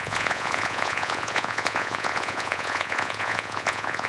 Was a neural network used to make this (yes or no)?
yes